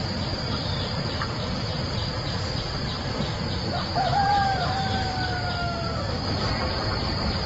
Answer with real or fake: real